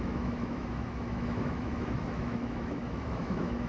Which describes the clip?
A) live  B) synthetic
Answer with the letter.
B